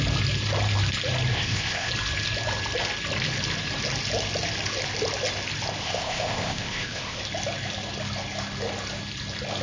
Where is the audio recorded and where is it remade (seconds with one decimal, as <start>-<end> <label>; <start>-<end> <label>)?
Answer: 0.0-1.3 recorded; 1.3-1.9 remade; 1.9-5.8 recorded; 5.8-7.2 remade; 7.2-9.6 recorded